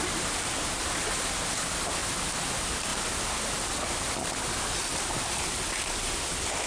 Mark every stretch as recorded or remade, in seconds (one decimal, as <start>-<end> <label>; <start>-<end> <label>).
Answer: 0.0-6.7 recorded